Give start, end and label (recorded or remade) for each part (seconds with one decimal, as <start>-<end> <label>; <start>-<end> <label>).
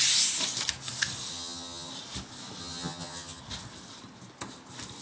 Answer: 0.0-1.3 recorded; 1.3-1.9 remade; 1.9-2.6 recorded; 2.6-3.4 remade; 3.4-5.0 recorded